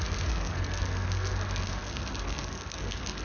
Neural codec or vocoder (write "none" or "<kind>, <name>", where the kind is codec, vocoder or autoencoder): codec, SNAC